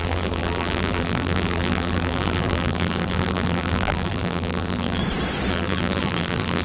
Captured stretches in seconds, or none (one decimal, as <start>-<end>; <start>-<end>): 5.0-5.5